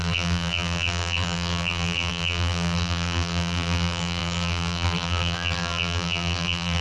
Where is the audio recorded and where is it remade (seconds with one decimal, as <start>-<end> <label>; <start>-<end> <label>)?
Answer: 0.0-6.8 remade